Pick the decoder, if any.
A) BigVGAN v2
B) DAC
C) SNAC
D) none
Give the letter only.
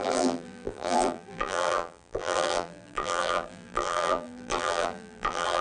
A